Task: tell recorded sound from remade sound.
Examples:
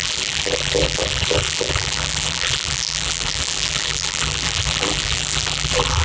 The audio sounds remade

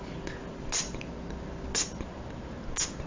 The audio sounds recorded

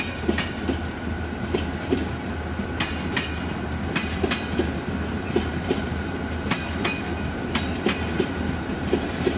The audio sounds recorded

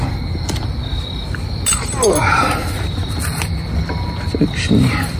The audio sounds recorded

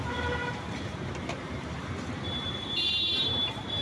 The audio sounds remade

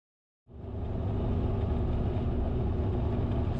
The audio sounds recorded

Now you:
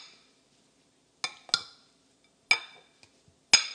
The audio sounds recorded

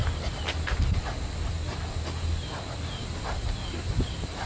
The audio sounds recorded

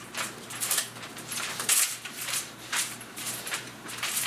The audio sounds remade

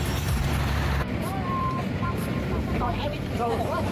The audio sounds remade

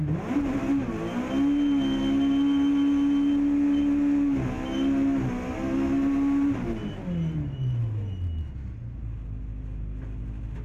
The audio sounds recorded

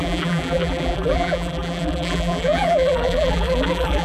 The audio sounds remade